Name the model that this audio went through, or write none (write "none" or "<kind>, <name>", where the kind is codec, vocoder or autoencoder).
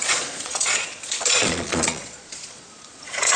vocoder, Vocos